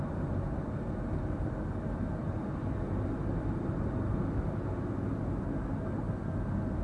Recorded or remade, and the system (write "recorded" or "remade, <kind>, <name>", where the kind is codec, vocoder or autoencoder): recorded